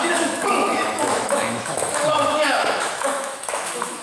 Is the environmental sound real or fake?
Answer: fake